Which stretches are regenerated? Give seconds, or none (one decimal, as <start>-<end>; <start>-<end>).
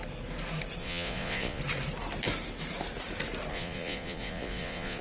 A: 0.8-1.6; 3.5-5.0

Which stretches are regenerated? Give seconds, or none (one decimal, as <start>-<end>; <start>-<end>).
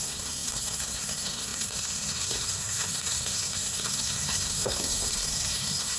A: 0.0-6.0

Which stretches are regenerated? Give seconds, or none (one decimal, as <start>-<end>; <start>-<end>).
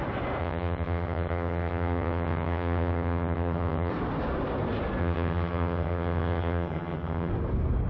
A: 0.4-3.9; 5.0-7.3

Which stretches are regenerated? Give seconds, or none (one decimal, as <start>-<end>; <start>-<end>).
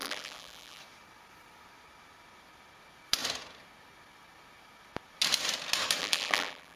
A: 0.0-0.8; 6.0-6.8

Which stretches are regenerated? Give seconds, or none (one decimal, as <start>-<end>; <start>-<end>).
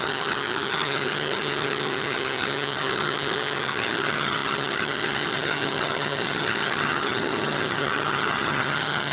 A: 0.0-9.1